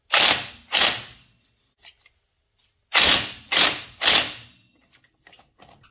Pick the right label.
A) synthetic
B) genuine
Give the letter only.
B